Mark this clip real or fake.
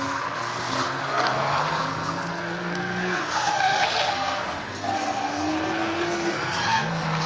fake